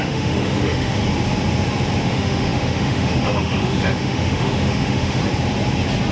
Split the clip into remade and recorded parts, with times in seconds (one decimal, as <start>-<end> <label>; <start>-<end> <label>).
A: 0.0-1.0 remade; 1.0-2.0 recorded; 2.0-5.2 remade; 5.2-6.1 recorded